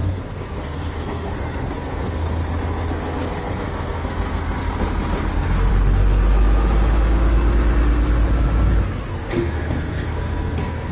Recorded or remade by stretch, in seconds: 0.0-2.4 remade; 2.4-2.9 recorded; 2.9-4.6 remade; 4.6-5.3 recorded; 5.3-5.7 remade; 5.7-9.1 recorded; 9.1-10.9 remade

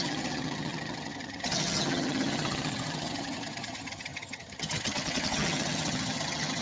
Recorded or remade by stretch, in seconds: 0.0-6.6 remade

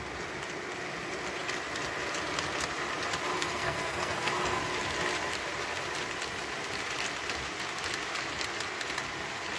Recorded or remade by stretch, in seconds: 0.0-3.3 recorded; 3.3-4.6 remade; 4.6-9.6 recorded

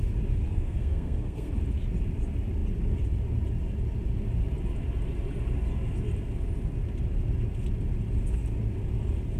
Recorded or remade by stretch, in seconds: 0.0-0.5 recorded; 0.5-1.5 remade; 1.5-9.4 recorded

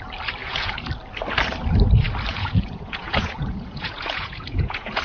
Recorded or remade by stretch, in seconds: 0.0-0.4 recorded; 0.4-0.9 remade; 0.9-2.3 recorded; 2.3-5.0 remade